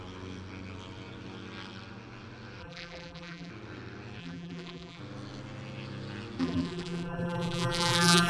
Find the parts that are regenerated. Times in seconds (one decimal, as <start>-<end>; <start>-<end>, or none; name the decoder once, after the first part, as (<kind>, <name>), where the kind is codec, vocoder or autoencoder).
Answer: 2.6-3.5 (vocoder, BigVGAN v2); 4.2-5.0; 6.4-8.3